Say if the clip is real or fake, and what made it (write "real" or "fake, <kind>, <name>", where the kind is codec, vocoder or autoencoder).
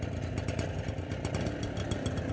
real